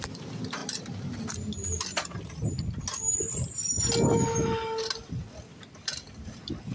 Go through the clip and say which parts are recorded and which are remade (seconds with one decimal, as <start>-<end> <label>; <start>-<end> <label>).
0.0-6.7 recorded

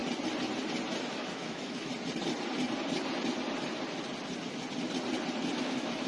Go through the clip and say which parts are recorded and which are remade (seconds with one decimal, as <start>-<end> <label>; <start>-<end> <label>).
0.0-1.1 recorded; 1.1-1.9 remade; 1.9-5.6 recorded; 5.6-6.1 remade

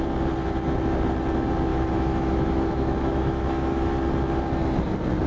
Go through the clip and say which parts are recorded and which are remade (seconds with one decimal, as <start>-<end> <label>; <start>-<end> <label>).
0.0-1.7 recorded; 1.7-3.9 remade; 3.9-5.3 recorded

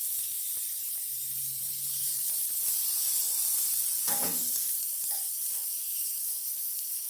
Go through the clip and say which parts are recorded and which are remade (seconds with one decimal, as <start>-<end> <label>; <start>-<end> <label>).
0.0-0.4 remade; 0.4-4.0 recorded; 4.0-7.1 remade

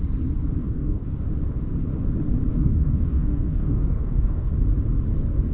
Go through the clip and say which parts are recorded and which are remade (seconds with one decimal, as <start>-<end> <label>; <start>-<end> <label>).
0.0-0.6 recorded; 0.6-1.2 remade; 1.2-2.5 recorded; 2.5-4.5 remade; 4.5-5.5 recorded

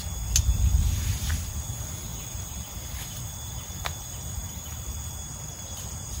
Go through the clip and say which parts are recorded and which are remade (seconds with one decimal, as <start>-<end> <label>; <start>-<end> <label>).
0.0-6.2 recorded

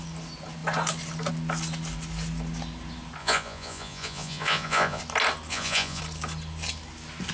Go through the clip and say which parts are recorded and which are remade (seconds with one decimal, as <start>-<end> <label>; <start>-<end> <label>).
0.0-3.2 recorded; 3.2-5.0 remade; 5.0-5.5 recorded; 5.5-6.0 remade; 6.0-7.3 recorded

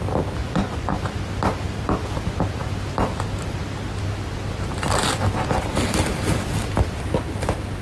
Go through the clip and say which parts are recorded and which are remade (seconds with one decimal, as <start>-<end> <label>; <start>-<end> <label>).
0.0-0.4 recorded; 0.4-1.0 remade; 1.0-7.8 recorded